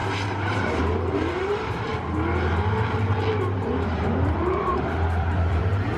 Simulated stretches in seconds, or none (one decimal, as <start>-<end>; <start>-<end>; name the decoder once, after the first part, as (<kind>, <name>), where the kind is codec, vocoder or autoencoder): 0.0-1.9 (vocoder, BigVGAN v2); 3.7-6.0